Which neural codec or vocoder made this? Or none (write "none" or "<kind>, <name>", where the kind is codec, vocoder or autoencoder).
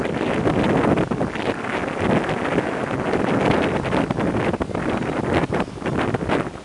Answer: none